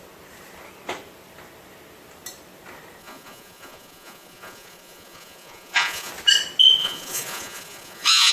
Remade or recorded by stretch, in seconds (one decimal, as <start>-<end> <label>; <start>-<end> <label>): 0.0-3.0 recorded; 3.0-6.1 remade; 6.1-6.8 recorded; 6.8-8.3 remade